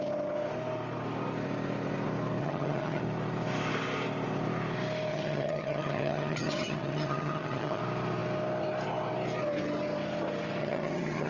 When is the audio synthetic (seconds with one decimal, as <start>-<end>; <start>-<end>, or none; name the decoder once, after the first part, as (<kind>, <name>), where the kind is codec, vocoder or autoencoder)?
2.4-3.0 (vocoder, HiFi-GAN); 5.1-7.8; 10.6-11.3